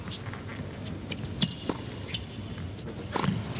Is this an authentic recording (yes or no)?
yes